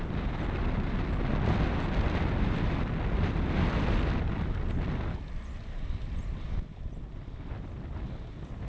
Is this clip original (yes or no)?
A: yes